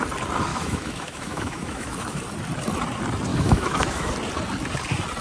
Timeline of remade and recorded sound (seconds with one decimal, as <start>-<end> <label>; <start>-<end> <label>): 0.0-0.5 recorded; 0.5-2.2 remade; 2.2-3.3 recorded; 3.3-4.1 remade; 4.1-5.2 recorded